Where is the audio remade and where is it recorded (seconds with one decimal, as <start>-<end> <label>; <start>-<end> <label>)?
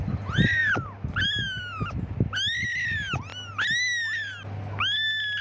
0.0-5.4 recorded